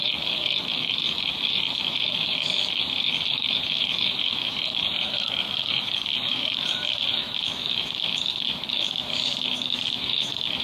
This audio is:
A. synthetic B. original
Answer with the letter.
A